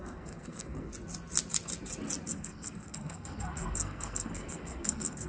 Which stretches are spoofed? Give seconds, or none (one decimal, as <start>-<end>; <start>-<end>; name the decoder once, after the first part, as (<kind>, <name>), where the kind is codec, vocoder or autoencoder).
0.0-0.9 (codec, SNAC); 2.3-5.3